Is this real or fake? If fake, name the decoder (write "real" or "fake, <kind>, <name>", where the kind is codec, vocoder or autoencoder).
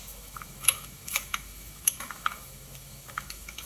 fake, autoencoder, DAC-VAE